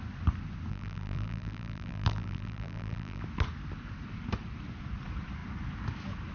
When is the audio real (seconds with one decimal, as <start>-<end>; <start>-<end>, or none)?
0.0-0.7; 3.2-6.3

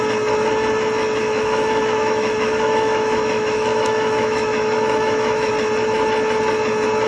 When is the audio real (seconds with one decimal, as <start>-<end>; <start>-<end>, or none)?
0.0-1.2; 5.5-7.1

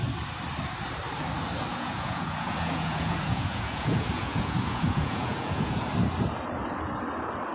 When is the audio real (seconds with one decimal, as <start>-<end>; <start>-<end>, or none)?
0.0-1.7; 5.9-7.5

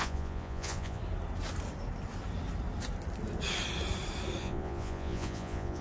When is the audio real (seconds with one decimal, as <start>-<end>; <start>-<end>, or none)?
1.0-4.4

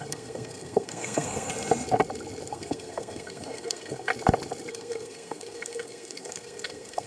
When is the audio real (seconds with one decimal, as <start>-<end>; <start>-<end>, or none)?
1.5-2.5; 4.1-4.7

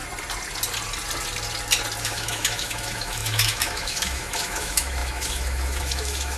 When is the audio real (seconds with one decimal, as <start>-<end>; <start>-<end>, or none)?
0.0-2.0

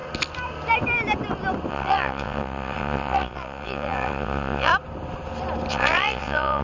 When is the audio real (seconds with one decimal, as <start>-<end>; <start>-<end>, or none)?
0.0-1.7; 4.7-5.7